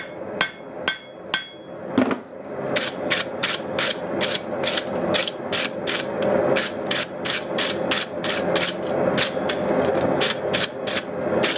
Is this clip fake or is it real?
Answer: real